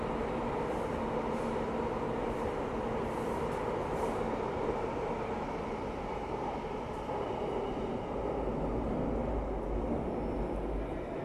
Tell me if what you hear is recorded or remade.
recorded